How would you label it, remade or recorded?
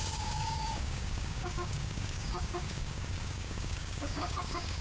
remade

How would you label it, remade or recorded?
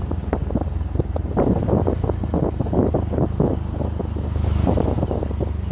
recorded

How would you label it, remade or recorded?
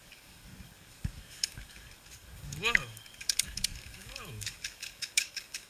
remade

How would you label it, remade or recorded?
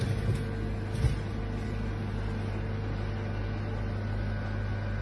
recorded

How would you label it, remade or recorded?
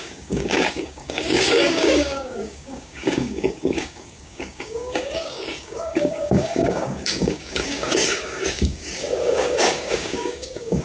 remade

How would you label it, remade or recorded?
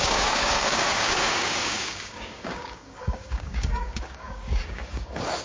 remade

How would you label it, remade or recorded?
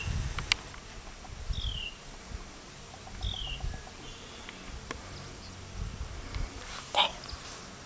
recorded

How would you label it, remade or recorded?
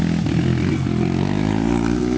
recorded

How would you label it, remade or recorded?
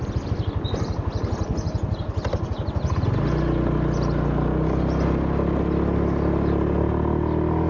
recorded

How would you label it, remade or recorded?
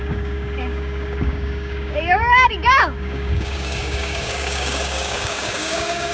remade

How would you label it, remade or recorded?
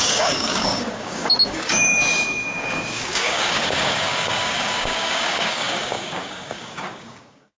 remade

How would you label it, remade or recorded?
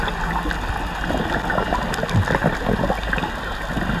recorded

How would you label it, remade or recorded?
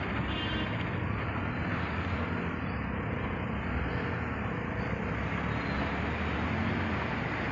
recorded